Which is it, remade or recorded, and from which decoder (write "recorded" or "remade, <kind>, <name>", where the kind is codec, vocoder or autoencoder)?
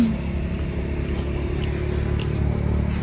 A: recorded